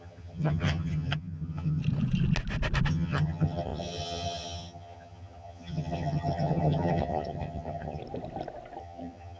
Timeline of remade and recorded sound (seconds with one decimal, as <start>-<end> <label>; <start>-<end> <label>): 0.0-1.8 remade; 1.8-2.9 recorded; 2.9-8.0 remade; 8.0-8.8 recorded; 8.8-9.4 remade